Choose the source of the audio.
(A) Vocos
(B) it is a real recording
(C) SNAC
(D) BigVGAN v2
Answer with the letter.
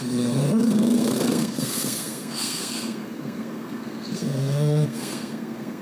C